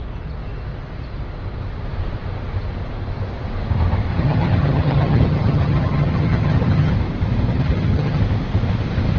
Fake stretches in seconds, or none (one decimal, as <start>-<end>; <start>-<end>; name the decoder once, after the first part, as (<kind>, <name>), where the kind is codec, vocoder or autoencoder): 4.1-6.9 (vocoder, HiFi-GAN); 7.5-8.2